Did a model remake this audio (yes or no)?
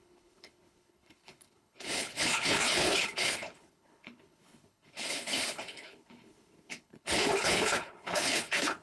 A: yes